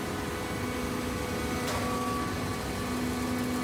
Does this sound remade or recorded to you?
recorded